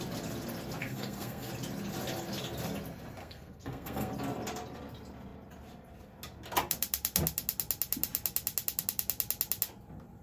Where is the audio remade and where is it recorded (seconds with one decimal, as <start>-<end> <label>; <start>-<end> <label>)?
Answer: 0.0-0.8 recorded; 0.8-1.5 remade; 1.5-3.2 recorded; 3.2-4.1 remade; 4.1-10.2 recorded